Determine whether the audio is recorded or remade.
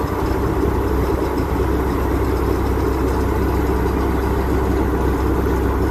recorded